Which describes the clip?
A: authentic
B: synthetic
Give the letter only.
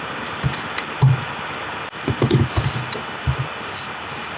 A